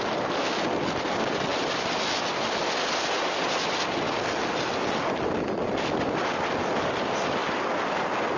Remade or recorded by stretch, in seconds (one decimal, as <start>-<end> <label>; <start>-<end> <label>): 0.0-8.4 recorded